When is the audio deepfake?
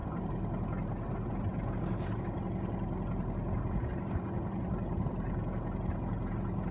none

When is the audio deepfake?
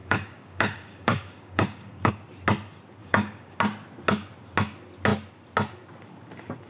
0.0-2.1 (codec, DAC); 3.0-3.6